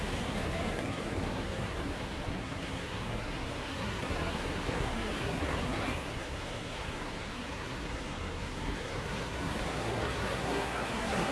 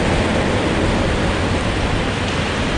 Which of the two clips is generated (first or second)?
first